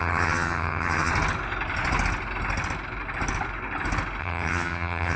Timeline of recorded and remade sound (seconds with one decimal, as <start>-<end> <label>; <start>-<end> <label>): 0.0-1.1 remade; 1.1-4.2 recorded; 4.2-5.2 remade